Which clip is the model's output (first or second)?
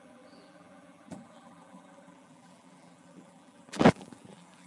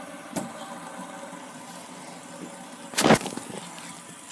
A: first